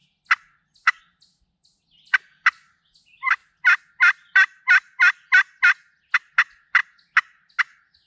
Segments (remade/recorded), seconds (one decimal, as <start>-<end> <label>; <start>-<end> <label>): 0.0-8.1 recorded